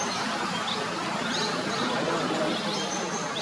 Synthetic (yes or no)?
no